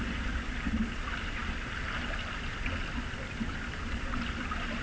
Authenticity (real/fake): real